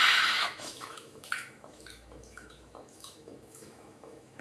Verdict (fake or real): fake